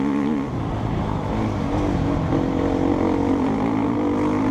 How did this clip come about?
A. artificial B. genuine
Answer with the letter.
B